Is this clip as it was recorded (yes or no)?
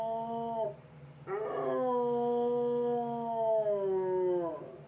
yes